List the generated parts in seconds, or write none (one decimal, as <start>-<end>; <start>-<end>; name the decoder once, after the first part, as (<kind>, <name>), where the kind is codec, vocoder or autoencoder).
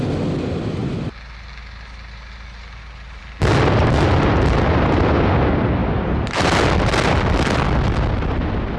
none